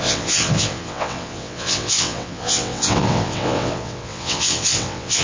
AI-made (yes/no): yes